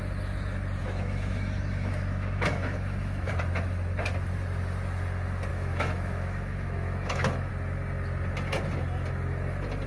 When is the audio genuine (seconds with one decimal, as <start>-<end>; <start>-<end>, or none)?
0.0-0.8; 3.3-5.5; 7.5-9.9